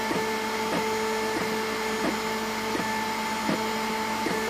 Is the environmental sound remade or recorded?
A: recorded